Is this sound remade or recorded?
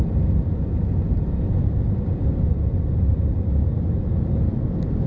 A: recorded